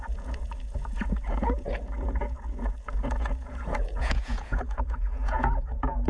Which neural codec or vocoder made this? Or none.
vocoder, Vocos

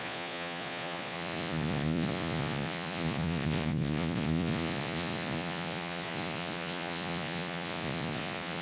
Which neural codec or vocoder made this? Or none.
vocoder, Vocos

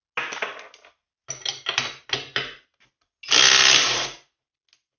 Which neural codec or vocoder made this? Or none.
none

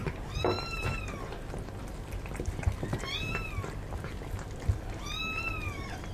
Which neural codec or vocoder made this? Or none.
none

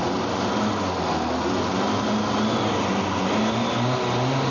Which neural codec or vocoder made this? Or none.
none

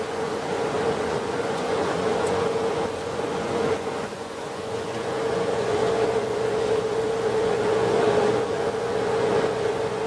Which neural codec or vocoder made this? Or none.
vocoder, Vocos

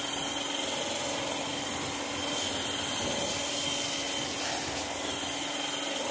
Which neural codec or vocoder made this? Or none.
none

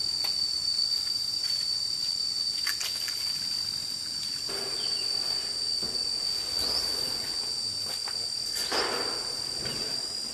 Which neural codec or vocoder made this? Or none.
none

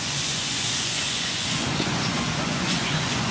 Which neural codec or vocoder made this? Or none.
vocoder, Vocos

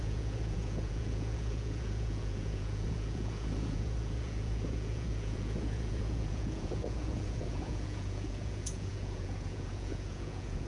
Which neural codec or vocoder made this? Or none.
vocoder, Vocos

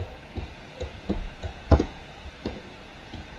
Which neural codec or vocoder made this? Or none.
vocoder, Vocos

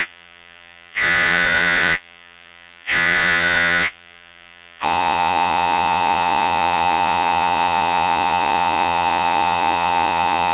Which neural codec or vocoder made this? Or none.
vocoder, Vocos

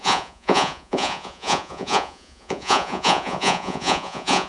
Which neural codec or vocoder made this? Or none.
vocoder, Vocos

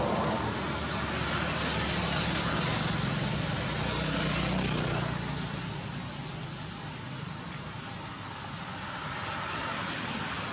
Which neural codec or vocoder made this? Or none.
none